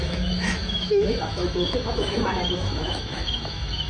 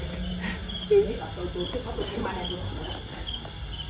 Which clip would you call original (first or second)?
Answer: second